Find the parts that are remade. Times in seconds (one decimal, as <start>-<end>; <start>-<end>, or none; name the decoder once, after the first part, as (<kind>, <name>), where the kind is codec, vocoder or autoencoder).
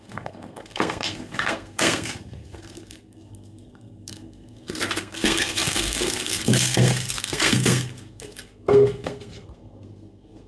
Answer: 0.0-10.5 (codec, SNAC)